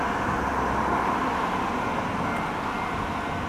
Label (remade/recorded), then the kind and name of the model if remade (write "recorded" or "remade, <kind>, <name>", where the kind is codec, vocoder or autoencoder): recorded